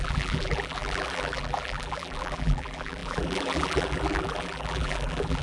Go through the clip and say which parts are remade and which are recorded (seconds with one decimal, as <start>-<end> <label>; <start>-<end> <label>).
0.0-5.4 remade